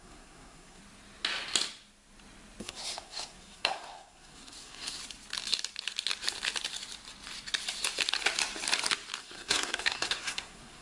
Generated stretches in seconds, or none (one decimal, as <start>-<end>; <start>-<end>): 0.0-0.8; 2.6-5.0; 9.2-10.8